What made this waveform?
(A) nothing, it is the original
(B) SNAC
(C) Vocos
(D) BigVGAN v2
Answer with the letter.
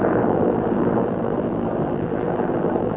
D